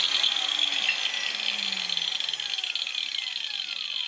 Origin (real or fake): real